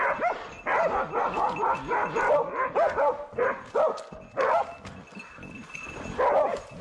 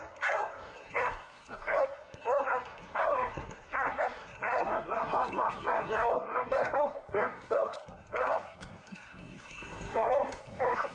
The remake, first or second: second